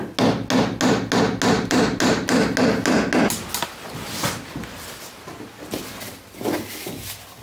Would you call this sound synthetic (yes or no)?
no